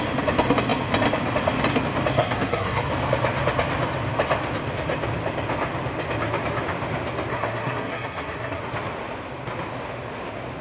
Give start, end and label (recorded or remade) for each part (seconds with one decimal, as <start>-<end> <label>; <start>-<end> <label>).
0.0-2.1 recorded; 2.1-2.9 remade; 2.9-7.3 recorded; 7.3-8.6 remade; 8.6-10.6 recorded